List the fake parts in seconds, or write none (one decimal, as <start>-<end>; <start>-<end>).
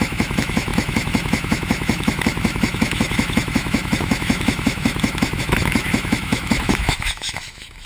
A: 0.0-7.9